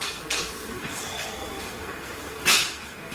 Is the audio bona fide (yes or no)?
no